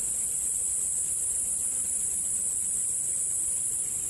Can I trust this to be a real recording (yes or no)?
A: yes